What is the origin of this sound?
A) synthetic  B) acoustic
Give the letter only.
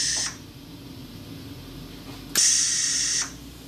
B